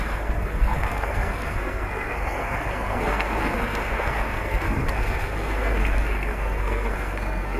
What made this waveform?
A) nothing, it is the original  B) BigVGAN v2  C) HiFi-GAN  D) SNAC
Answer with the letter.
D